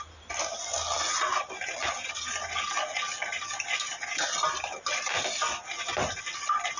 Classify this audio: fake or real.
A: real